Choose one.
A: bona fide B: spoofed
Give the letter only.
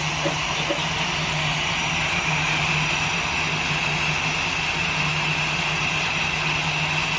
A